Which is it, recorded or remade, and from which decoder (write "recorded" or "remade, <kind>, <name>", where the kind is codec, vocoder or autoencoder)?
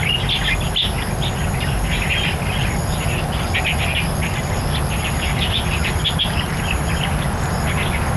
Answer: recorded